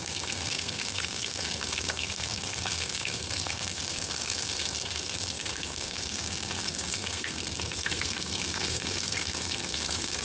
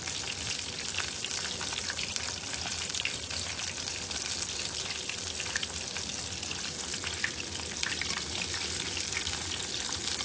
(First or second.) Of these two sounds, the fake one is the first